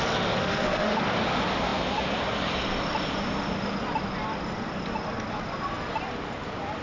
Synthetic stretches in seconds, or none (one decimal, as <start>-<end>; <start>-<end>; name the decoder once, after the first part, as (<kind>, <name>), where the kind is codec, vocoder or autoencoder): 0.4-1.0 (autoencoder, DAC-VAE)